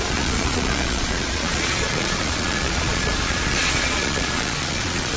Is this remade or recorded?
remade